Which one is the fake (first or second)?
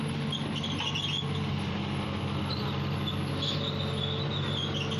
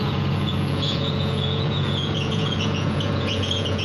second